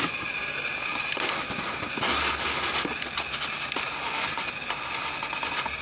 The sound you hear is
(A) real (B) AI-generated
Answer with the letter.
A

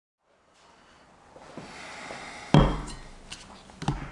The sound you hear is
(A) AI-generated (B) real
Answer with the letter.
B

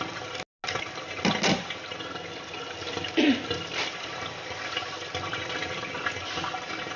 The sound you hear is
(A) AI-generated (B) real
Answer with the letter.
B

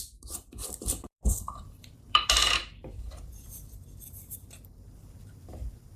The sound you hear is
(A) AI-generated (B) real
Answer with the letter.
A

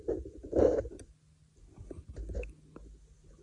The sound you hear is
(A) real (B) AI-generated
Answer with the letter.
A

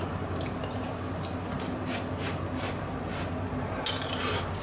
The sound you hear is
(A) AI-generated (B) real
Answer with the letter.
B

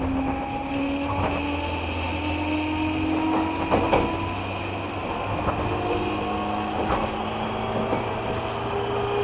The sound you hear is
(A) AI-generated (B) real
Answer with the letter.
B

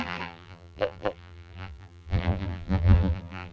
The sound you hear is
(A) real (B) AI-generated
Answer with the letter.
B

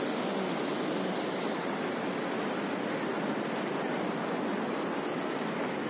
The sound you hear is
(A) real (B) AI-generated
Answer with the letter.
A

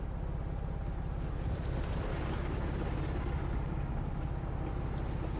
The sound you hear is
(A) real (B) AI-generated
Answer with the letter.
A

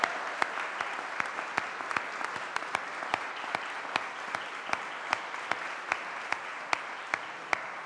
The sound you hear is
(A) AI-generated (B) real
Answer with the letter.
B